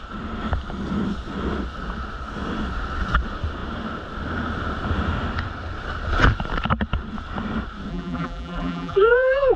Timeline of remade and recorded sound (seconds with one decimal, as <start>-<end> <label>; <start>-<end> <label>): 0.0-7.9 recorded; 7.9-9.6 remade